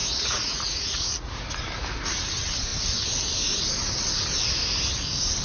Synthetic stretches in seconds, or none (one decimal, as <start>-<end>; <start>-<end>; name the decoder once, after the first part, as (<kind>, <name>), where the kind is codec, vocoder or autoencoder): 0.0-1.4 (vocoder, Vocos)